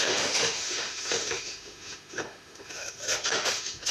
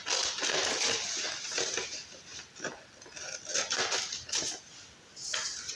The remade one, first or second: first